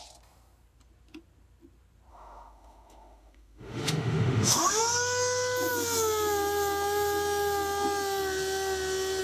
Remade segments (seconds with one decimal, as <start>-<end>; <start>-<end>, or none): 2.1-4.8